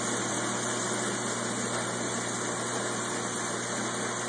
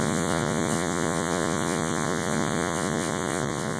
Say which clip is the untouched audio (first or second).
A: first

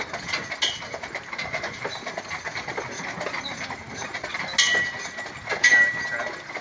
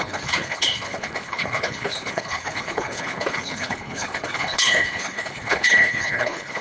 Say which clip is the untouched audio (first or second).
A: first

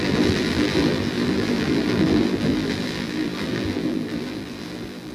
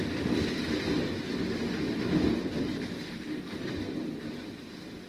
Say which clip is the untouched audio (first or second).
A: second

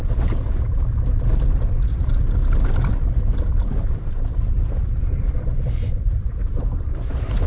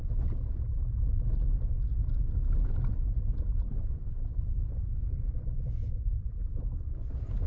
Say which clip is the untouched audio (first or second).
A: second